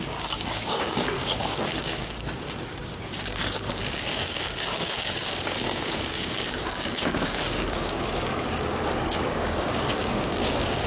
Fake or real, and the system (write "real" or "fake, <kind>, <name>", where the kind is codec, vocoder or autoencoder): fake, codec, DAC